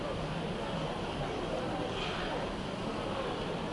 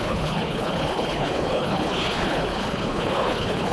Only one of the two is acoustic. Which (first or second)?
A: first